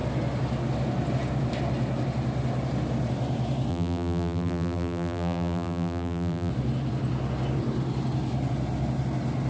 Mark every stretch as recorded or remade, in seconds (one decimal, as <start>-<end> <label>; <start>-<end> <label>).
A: 0.0-3.7 recorded; 3.7-6.5 remade; 6.5-9.5 recorded

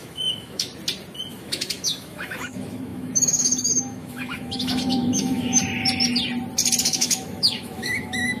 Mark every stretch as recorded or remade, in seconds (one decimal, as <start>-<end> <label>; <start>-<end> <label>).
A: 0.0-0.7 remade; 0.7-1.3 recorded; 1.3-5.6 remade; 5.6-6.8 recorded; 6.8-8.4 remade

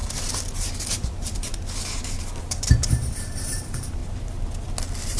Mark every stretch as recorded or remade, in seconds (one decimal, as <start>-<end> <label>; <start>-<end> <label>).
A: 0.0-0.9 recorded; 0.9-1.5 remade; 1.5-2.4 recorded; 2.4-4.0 remade; 4.0-5.2 recorded

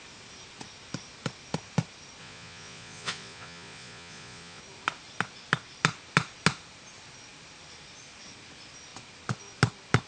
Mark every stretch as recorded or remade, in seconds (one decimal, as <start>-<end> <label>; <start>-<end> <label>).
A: 0.0-2.2 recorded; 2.2-4.6 remade; 4.6-10.1 recorded

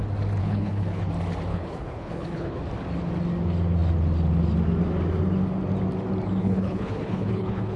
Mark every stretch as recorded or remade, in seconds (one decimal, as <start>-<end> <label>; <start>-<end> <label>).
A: 0.0-0.4 recorded; 0.4-1.1 remade; 1.1-1.5 recorded; 1.5-2.6 remade; 2.6-6.4 recorded; 6.4-7.8 remade

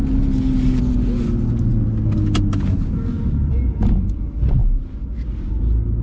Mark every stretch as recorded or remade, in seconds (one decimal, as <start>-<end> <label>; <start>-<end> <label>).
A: 0.0-6.0 recorded